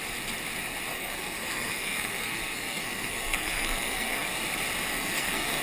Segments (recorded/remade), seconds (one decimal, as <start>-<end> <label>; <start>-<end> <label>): 0.0-0.9 recorded; 0.9-4.3 remade; 4.3-4.9 recorded; 4.9-5.6 remade